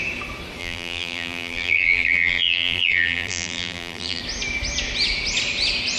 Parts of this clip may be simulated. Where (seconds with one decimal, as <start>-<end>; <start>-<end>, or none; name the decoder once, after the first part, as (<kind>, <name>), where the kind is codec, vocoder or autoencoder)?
0.6-4.2 (vocoder, BigVGAN v2)